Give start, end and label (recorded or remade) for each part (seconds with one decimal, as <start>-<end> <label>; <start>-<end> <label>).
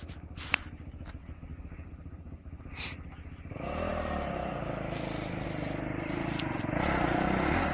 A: 0.0-1.5 recorded; 1.5-2.6 remade; 2.6-3.9 recorded; 3.9-6.4 remade; 6.4-7.7 recorded